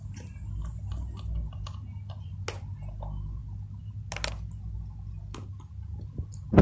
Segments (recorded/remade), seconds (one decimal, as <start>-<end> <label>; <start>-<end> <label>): 0.0-6.6 recorded